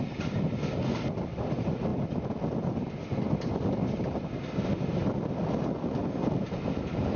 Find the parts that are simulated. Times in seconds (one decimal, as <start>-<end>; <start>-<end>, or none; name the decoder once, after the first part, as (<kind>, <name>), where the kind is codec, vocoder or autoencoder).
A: none